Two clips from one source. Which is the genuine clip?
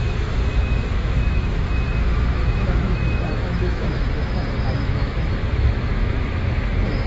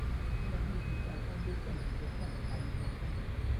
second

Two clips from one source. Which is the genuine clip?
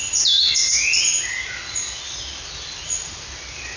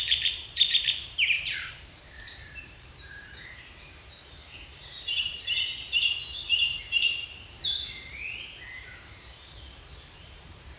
first